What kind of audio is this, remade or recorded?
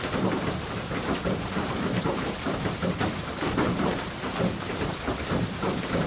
remade